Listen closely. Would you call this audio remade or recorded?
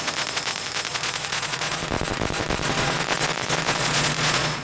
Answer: remade